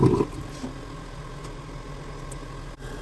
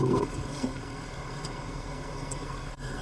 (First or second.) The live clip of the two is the first